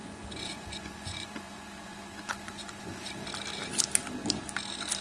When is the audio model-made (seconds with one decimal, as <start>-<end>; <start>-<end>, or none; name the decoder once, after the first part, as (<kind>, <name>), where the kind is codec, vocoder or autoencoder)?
0.0-3.0 (vocoder, Vocos)